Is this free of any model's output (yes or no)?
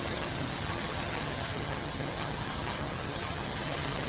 no